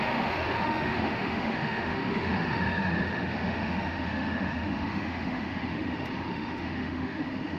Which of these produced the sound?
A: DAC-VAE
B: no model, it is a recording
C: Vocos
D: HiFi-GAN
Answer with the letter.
A